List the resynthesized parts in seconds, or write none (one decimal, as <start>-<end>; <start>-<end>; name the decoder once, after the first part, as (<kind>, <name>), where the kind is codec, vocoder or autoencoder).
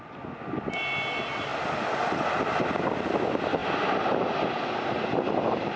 3.6-5.3 (vocoder, BigVGAN v2)